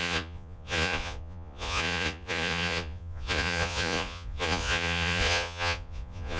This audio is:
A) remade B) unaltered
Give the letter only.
A